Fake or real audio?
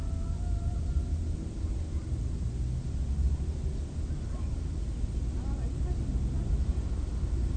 real